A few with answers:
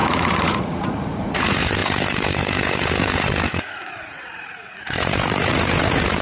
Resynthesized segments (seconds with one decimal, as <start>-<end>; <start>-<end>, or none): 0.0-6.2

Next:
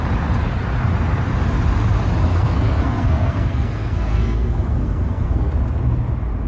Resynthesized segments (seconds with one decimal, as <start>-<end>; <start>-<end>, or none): 2.3-5.5

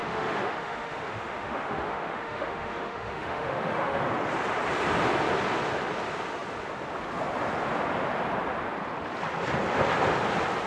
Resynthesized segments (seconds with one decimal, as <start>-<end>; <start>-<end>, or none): 0.0-4.0

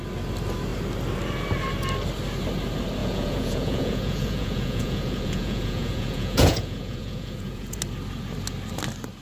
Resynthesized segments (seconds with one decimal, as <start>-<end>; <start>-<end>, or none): 3.0-7.8

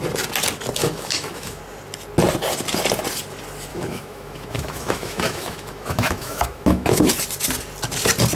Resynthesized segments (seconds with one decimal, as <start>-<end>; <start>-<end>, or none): 0.8-1.6; 3.7-7.1

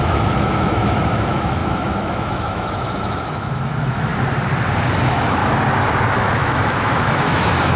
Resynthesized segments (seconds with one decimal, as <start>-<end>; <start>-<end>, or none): 0.0-4.1; 5.0-5.4; 6.1-7.8

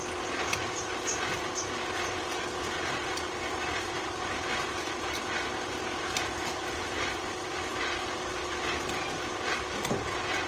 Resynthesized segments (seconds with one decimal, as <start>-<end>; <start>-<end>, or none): none